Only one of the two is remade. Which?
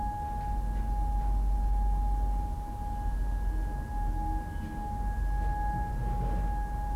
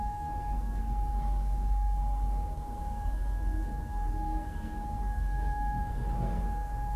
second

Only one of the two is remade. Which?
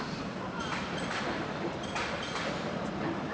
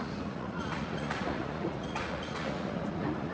second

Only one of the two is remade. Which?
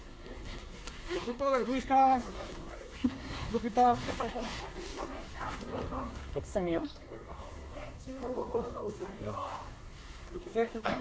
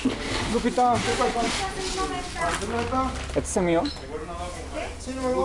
first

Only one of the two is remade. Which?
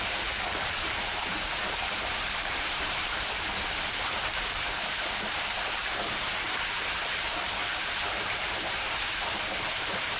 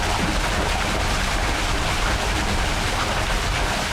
first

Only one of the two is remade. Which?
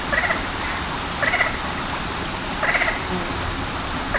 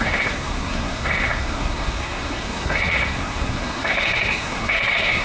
second